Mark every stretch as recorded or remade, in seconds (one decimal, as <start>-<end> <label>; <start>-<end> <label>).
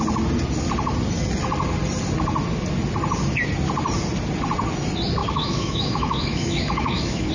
0.0-5.2 recorded; 5.2-7.3 remade